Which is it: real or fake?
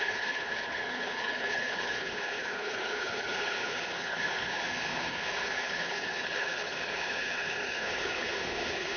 fake